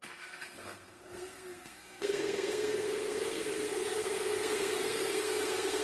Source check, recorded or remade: remade